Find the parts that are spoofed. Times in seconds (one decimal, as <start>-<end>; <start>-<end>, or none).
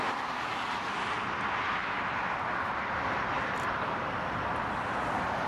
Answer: none